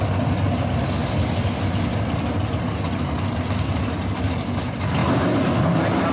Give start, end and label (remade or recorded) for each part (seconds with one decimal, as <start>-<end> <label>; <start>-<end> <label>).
0.0-6.1 recorded